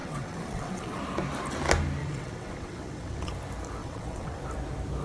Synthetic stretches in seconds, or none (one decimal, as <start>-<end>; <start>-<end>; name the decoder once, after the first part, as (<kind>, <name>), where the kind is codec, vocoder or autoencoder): 0.0-1.0 (vocoder, WaveNeXt); 2.0-3.3; 3.8-4.4